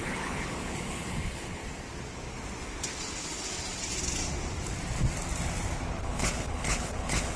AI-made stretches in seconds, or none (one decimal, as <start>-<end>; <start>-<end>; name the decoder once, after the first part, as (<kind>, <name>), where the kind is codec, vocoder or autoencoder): 0.0-1.6 (codec, HILCodec); 6.0-7.4